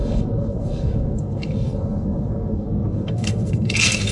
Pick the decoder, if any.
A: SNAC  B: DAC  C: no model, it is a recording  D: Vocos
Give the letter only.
A